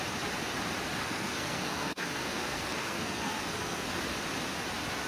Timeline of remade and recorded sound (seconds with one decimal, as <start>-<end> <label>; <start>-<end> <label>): 0.0-1.0 recorded; 1.0-4.0 remade; 4.0-5.1 recorded